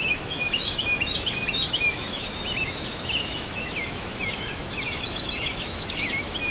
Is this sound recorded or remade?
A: remade